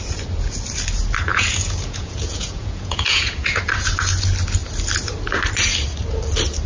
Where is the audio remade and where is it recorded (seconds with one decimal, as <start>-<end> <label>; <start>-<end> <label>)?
0.0-1.3 recorded; 1.3-3.6 remade; 3.6-6.7 recorded